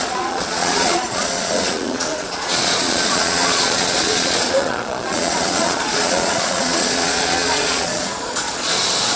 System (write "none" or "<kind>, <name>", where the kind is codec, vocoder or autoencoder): vocoder, Vocos